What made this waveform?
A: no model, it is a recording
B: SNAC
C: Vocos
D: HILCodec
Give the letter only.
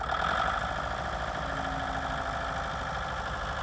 A